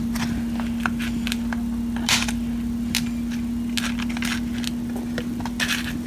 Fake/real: real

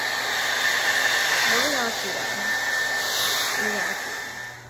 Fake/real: real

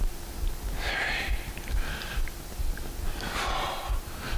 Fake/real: real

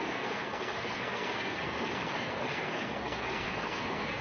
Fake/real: fake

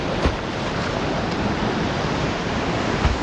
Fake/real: real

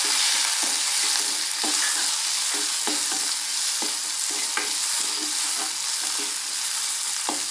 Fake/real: real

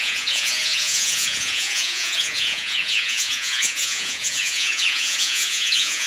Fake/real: fake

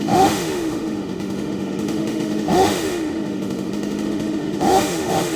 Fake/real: fake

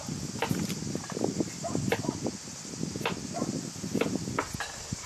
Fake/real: real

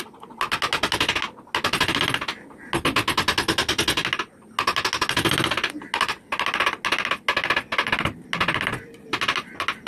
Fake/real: real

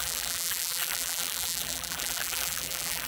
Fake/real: fake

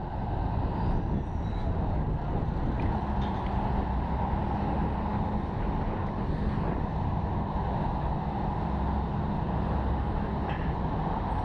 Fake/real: real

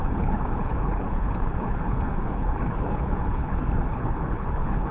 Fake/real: fake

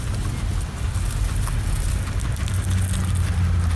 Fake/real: real